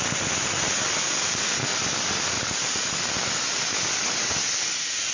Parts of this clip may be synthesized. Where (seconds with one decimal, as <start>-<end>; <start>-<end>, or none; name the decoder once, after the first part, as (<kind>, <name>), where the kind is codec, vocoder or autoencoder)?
none